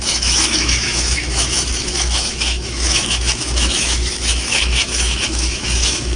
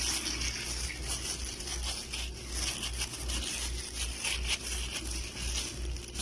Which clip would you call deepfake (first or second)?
first